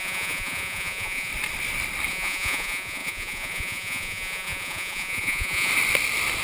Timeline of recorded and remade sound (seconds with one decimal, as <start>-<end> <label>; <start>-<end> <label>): 0.0-1.3 remade; 1.3-2.1 recorded; 2.1-5.7 remade; 5.7-6.4 recorded